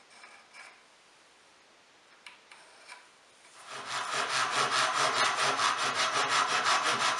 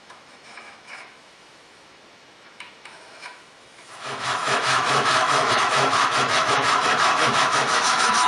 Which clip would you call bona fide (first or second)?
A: first